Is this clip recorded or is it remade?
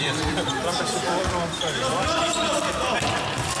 remade